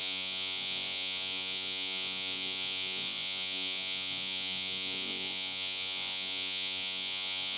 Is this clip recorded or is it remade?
remade